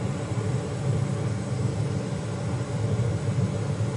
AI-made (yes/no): yes